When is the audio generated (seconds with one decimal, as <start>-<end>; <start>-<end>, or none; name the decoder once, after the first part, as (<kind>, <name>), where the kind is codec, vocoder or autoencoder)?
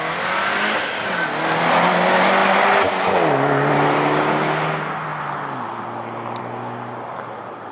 none